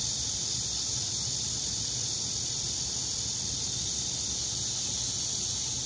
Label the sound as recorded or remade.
recorded